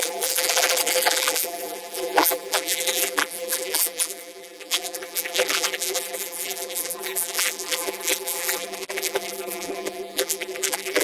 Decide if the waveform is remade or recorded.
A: remade